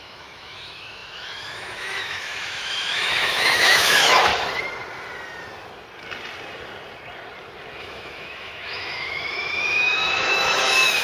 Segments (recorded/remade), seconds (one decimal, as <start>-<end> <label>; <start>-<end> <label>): 0.0-4.3 remade; 4.3-7.8 recorded; 7.8-11.0 remade